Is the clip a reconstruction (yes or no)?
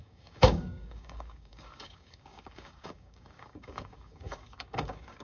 yes